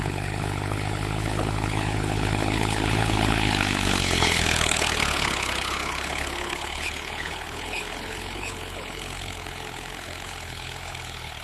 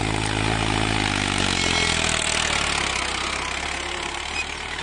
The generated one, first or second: first